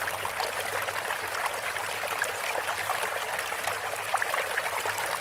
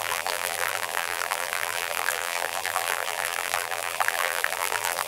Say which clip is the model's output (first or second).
second